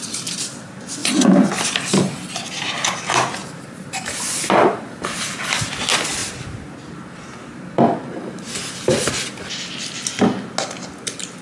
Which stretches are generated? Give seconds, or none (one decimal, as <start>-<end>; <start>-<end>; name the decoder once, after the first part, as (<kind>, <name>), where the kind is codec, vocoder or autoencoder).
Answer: 3.4-5.7 (vocoder, BigVGAN v2)